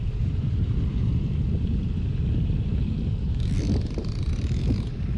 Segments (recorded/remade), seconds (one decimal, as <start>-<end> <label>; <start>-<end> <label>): 0.0-1.1 remade; 1.1-3.9 recorded; 3.9-5.2 remade